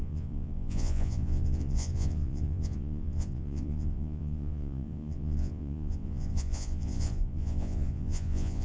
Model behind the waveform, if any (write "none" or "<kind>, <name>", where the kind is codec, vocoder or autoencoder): vocoder, Vocos